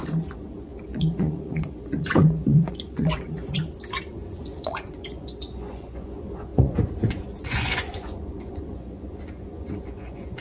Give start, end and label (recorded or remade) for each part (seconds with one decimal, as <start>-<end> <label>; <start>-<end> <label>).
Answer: 0.0-3.6 remade; 3.6-4.1 recorded; 4.1-10.4 remade